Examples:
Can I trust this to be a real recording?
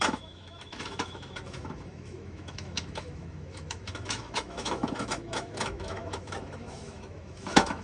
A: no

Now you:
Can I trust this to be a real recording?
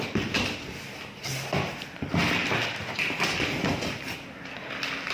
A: yes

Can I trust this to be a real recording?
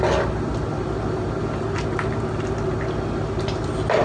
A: yes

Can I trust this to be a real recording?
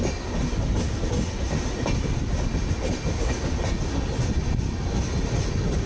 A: yes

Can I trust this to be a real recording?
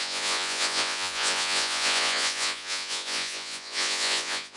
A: no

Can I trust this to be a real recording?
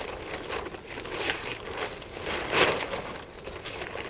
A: yes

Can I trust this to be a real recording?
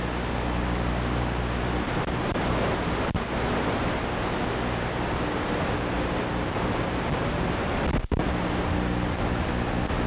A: yes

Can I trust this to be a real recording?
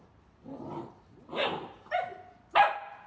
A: yes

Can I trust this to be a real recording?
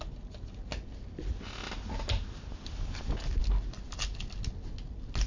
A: yes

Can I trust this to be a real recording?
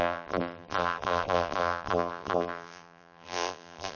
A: no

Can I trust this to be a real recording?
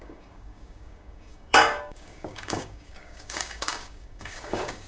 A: no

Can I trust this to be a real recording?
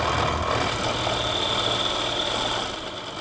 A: yes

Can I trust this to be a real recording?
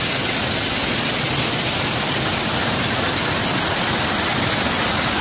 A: yes